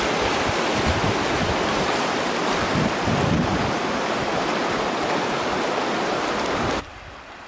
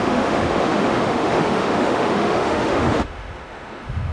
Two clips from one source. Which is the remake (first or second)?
second